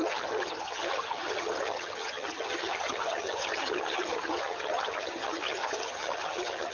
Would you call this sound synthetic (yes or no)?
yes